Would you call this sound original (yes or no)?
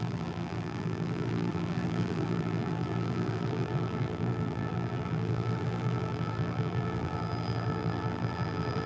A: no